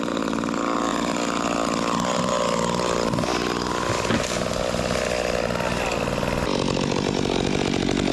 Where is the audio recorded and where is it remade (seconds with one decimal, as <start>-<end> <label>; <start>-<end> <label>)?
0.0-8.1 recorded